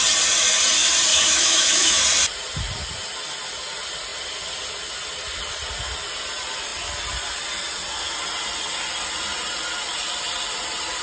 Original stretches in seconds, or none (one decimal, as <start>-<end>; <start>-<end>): 0.0-1.1; 2.0-11.0